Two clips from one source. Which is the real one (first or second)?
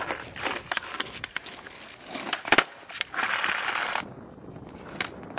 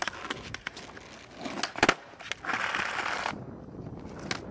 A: second